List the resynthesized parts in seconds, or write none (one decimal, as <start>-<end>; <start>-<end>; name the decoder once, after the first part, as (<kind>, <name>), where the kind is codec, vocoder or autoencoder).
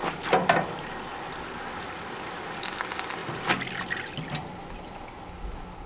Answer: none